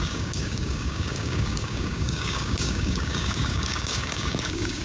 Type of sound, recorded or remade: remade